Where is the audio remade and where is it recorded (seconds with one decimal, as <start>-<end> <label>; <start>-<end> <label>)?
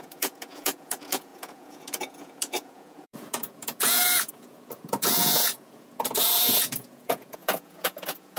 0.0-8.4 remade